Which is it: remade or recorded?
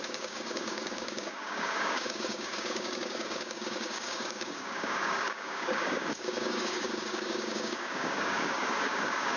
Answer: remade